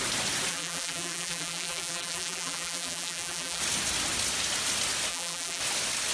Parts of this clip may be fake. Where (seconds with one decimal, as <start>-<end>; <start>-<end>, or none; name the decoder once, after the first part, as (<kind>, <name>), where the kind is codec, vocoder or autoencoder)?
0.5-3.6 (vocoder, BigVGAN v2); 5.1-5.6